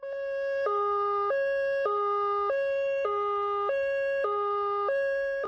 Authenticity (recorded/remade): recorded